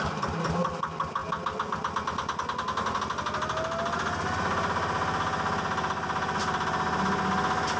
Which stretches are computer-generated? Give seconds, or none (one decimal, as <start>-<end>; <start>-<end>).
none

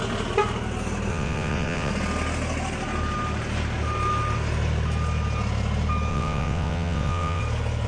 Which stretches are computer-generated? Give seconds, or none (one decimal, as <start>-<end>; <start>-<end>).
1.1-1.9; 6.1-7.4

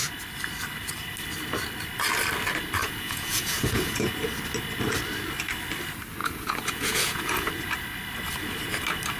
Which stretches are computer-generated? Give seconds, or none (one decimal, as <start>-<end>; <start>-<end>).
2.8-4.1; 6.2-7.5

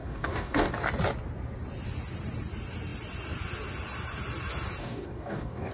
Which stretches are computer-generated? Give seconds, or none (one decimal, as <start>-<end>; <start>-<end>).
0.0-0.7; 4.8-5.7

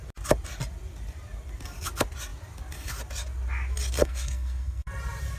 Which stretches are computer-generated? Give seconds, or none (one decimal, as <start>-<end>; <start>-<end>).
4.0-4.9

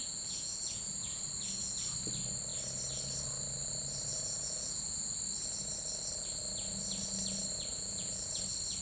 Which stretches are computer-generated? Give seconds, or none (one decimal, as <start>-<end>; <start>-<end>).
0.0-1.2; 4.1-5.1; 7.7-8.4

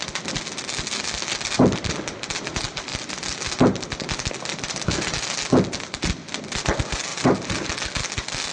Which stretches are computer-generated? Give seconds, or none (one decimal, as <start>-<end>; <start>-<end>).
7.1-7.7